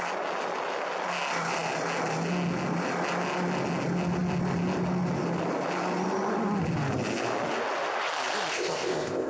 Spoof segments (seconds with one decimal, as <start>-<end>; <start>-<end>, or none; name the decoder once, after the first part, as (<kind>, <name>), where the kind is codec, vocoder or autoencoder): 8.5-9.3 (codec, ZipCodec)